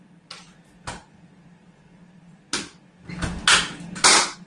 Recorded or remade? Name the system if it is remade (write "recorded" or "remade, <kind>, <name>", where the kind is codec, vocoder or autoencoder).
recorded